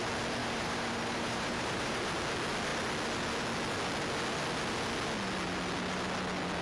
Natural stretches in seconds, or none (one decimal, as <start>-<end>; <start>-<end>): 0.0-0.4; 1.9-6.6